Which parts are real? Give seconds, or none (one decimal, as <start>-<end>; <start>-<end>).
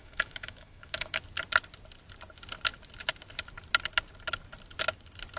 1.2-5.4